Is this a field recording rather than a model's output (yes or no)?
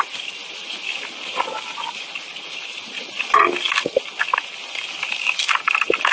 yes